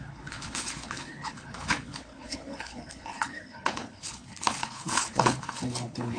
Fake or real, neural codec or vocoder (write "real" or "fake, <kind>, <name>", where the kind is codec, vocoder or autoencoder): fake, codec, HILCodec